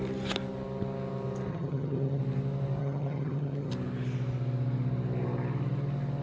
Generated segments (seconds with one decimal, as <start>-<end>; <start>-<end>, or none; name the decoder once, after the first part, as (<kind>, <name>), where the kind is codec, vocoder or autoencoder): 1.5-2.2 (vocoder, HiFi-GAN); 2.8-3.7